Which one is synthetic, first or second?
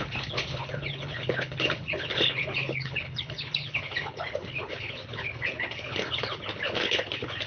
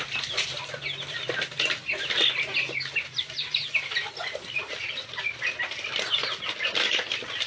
first